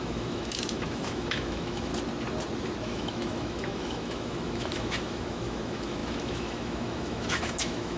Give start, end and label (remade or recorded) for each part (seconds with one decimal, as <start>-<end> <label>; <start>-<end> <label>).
0.0-1.9 remade; 1.9-2.8 recorded; 2.8-8.0 remade